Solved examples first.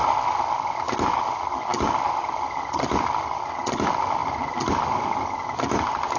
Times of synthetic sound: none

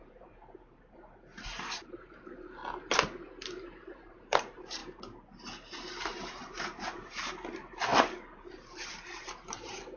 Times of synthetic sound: 0.0-2.6; 3.7-4.8; 6.0-10.0

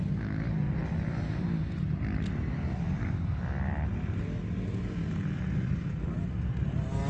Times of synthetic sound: none

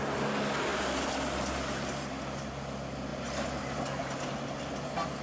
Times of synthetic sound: none

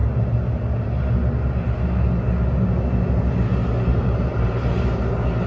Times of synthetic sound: 3.9-5.0

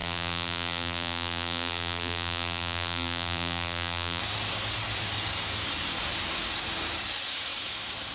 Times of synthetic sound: 0.0-4.2

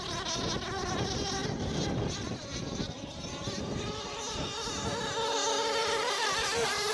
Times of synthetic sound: 1.4-4.4; 5.8-6.9